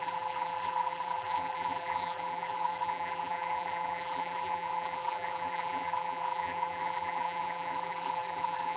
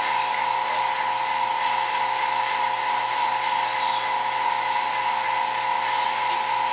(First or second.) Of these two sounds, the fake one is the first